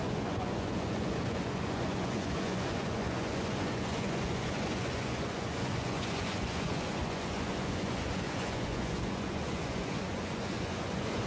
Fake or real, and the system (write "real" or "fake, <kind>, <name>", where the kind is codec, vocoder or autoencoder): fake, vocoder, Vocos